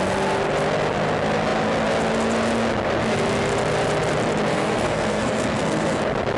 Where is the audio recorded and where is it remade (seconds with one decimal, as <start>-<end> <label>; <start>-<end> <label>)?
0.0-4.5 recorded; 4.5-6.0 remade; 6.0-6.4 recorded